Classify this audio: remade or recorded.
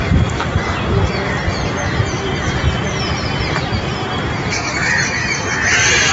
recorded